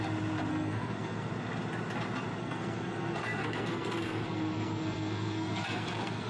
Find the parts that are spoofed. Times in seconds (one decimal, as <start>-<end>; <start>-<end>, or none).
0.5-1.3; 2.4-6.3